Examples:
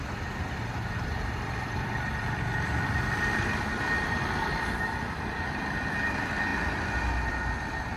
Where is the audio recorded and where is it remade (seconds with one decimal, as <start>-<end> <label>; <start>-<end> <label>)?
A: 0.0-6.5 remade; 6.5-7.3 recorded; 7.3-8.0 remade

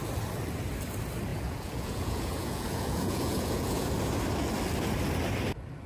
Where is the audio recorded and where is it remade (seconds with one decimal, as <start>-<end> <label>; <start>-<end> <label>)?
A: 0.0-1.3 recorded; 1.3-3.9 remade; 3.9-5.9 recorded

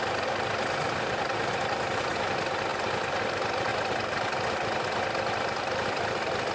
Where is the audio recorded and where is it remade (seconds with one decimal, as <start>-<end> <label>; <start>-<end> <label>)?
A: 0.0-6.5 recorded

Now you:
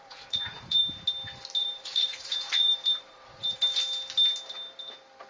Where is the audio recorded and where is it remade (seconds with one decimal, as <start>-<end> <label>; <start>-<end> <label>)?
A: 0.0-0.8 remade; 0.8-1.6 recorded; 1.6-3.6 remade; 3.6-5.3 recorded